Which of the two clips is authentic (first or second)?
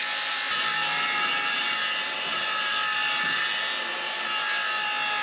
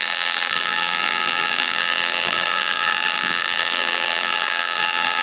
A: first